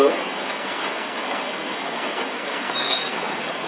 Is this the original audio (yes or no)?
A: no